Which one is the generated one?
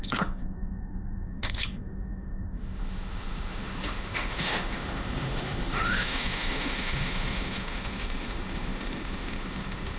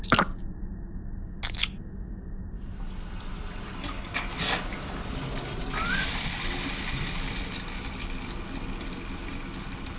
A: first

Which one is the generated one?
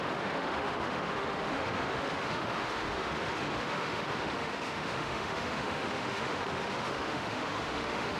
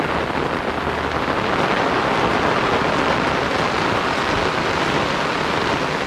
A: first